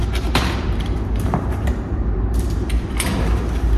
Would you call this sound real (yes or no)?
no